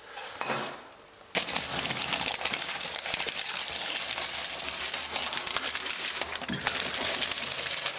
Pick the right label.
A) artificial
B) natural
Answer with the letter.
B